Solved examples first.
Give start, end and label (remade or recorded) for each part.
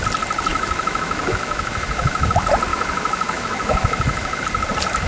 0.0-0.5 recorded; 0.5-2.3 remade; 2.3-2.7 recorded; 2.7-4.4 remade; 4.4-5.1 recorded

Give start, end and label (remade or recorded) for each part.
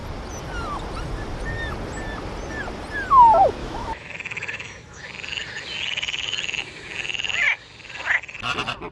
0.0-3.6 recorded; 3.6-5.0 remade; 5.0-8.9 recorded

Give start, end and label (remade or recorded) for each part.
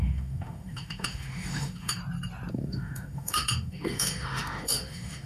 0.0-2.0 remade; 2.0-2.5 recorded; 2.5-5.3 remade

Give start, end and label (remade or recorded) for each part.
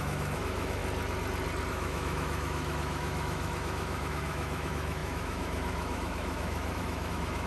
0.0-0.8 remade; 0.8-1.7 recorded; 1.7-7.5 remade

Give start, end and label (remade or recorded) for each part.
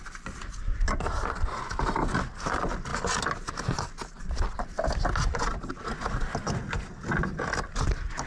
0.0-8.3 recorded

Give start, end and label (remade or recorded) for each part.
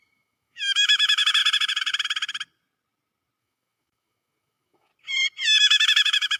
0.0-1.4 remade; 1.4-3.4 recorded; 3.4-4.9 remade; 4.9-5.6 recorded; 5.6-6.4 remade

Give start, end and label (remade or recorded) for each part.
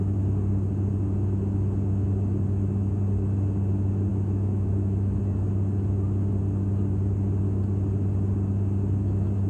0.0-4.1 recorded; 4.1-5.2 remade; 5.2-9.5 recorded